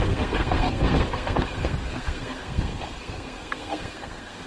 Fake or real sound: fake